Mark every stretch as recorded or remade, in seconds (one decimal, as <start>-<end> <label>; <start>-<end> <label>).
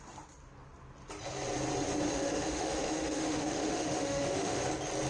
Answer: 0.0-2.1 recorded; 2.1-4.6 remade; 4.6-5.1 recorded